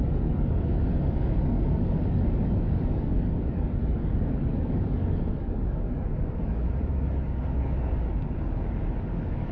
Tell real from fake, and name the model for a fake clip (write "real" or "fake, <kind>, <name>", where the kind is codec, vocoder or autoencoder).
fake, codec, DAC